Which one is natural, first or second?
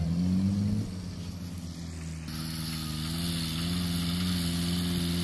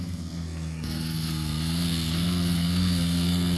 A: first